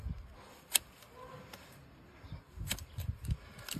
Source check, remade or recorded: recorded